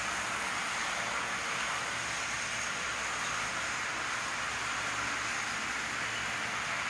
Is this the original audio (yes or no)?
yes